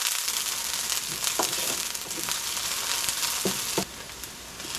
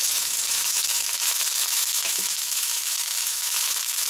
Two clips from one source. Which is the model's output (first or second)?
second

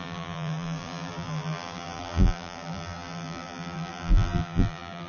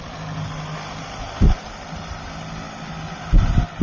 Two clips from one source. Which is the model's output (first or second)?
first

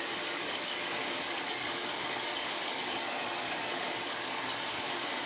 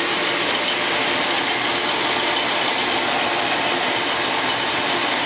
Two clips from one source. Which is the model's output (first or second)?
first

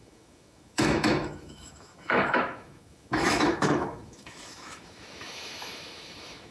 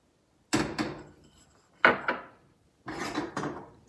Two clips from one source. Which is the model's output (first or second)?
first